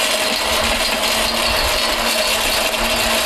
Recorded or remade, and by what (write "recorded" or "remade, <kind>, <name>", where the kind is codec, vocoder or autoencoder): recorded